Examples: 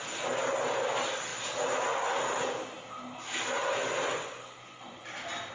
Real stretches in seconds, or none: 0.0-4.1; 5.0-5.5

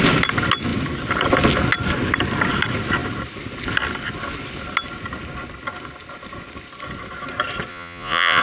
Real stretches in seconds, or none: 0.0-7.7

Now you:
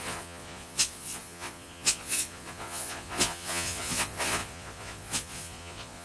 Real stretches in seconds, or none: none

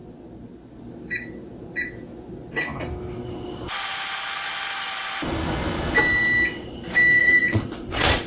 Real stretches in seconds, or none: 0.0-7.2

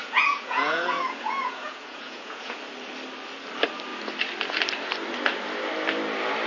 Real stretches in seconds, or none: 2.6-6.5

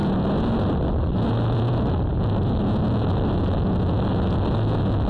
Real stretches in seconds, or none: 0.0-5.1

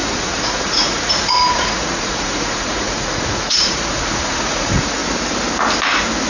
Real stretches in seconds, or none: 5.0-6.3